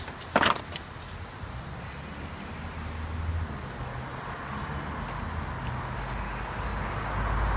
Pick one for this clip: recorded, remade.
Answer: recorded